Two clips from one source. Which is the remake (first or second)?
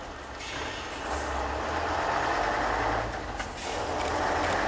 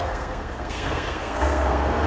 second